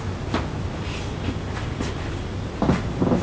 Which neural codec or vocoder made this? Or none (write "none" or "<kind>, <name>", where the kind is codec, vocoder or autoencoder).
none